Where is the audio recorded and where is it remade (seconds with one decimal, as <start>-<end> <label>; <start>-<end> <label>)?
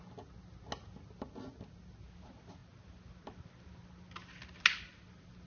0.0-5.5 recorded